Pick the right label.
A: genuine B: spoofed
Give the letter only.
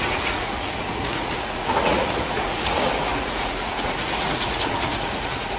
B